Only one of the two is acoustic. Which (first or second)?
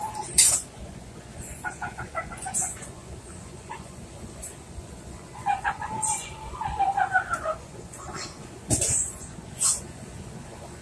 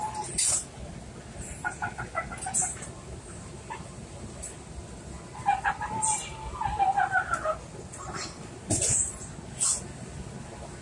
second